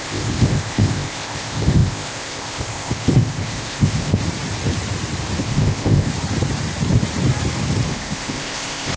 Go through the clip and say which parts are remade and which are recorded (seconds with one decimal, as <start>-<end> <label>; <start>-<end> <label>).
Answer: 0.0-4.2 remade; 4.2-5.4 recorded; 5.4-6.1 remade; 6.1-7.9 recorded; 7.9-9.0 remade